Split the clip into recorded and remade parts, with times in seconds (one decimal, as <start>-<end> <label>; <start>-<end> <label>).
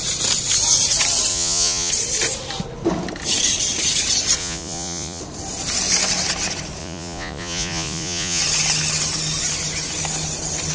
0.0-1.3 recorded; 1.3-1.9 remade; 1.9-4.4 recorded; 4.4-5.2 remade; 5.2-6.8 recorded; 6.8-8.4 remade; 8.4-10.7 recorded